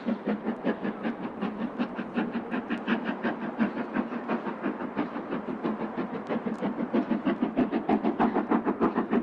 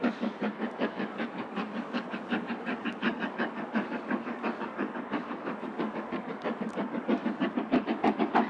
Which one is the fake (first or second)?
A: second